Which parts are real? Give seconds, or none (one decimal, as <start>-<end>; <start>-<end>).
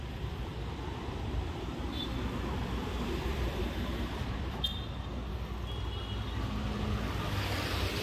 4.7-7.3